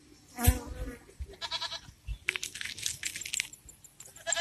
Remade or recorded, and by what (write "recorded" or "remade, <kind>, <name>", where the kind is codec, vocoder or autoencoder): recorded